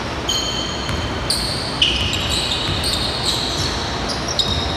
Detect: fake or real real